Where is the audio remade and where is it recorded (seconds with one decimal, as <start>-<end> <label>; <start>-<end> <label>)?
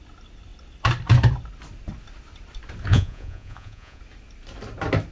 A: 0.0-2.9 recorded; 2.9-4.0 remade; 4.0-5.1 recorded